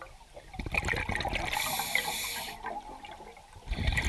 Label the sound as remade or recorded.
recorded